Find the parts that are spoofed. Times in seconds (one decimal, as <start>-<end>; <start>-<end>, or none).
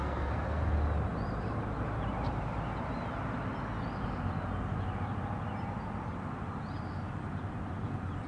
0.0-0.6